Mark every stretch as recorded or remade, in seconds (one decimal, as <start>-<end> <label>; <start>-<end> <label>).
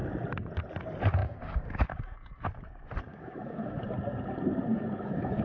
0.0-3.1 recorded; 3.1-3.8 remade; 3.8-4.7 recorded; 4.7-5.4 remade